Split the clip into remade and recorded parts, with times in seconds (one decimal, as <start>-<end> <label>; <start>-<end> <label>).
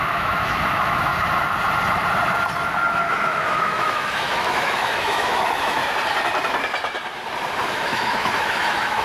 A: 0.0-1.1 remade; 1.1-3.1 recorded; 3.1-5.8 remade; 5.8-7.7 recorded; 7.7-9.0 remade